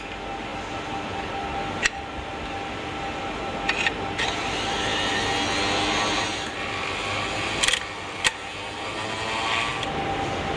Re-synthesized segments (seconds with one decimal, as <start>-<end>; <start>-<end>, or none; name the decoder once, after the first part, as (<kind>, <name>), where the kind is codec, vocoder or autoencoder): none